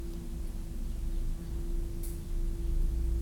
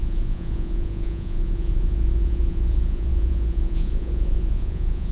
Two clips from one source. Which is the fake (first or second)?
second